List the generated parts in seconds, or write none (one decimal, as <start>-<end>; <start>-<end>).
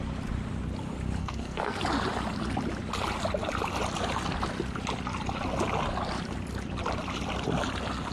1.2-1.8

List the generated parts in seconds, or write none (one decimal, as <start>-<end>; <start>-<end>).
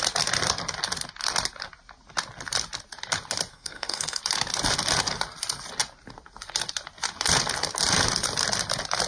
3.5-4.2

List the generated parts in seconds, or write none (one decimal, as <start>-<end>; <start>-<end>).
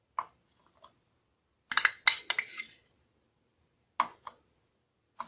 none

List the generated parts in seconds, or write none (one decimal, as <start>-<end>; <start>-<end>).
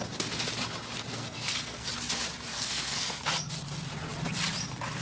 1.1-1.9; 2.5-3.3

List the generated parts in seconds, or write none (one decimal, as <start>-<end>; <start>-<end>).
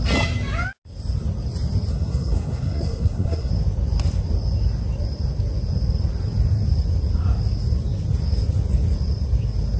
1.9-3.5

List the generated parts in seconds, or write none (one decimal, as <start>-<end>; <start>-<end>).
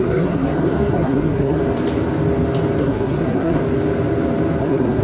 0.0-1.6; 2.8-3.6; 4.6-5.0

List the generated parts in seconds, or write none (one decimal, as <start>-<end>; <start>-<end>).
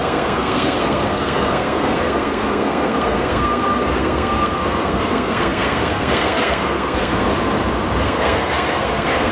0.0-7.3; 8.0-9.3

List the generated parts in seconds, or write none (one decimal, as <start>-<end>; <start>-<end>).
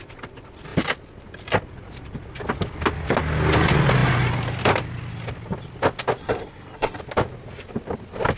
6.2-7.0